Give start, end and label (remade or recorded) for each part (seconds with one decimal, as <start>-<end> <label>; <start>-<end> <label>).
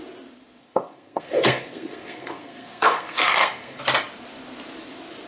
0.0-0.6 recorded; 0.6-3.8 remade; 3.8-5.3 recorded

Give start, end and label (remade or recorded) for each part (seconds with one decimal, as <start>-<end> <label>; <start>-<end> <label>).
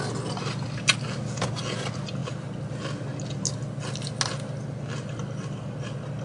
0.0-6.2 recorded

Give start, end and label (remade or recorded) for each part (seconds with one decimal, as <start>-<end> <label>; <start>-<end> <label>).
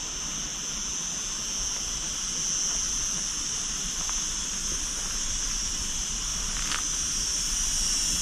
0.0-8.2 recorded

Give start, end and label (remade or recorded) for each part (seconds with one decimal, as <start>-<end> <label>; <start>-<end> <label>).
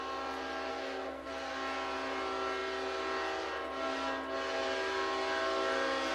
0.0-0.7 recorded; 0.7-1.3 remade; 1.3-6.1 recorded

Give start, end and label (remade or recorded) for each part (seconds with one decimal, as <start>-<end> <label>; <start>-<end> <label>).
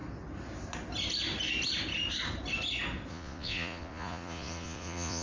0.0-3.1 recorded; 3.1-5.2 remade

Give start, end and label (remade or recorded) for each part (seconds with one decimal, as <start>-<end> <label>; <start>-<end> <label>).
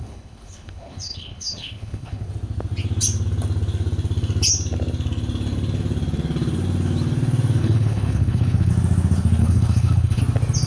0.0-2.3 remade; 2.3-7.6 recorded; 7.6-8.7 remade; 8.7-9.4 recorded; 9.4-10.2 remade; 10.2-10.7 recorded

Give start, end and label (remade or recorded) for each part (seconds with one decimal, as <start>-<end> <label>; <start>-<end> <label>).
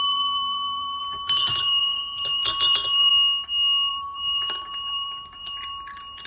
0.0-3.1 remade; 3.1-3.9 recorded; 3.9-6.3 remade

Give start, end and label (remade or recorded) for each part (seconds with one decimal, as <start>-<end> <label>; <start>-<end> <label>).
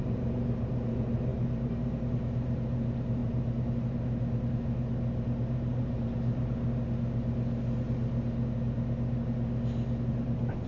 0.0-6.4 remade; 6.4-10.1 recorded; 10.1-10.7 remade